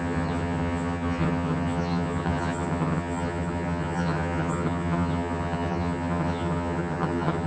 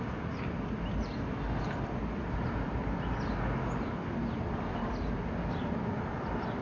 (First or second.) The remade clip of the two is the first